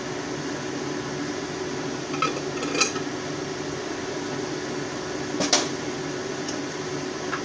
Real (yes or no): yes